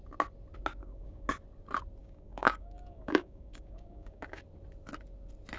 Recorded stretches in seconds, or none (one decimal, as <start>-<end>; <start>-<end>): 0.0-0.8; 1.3-2.0; 4.4-5.6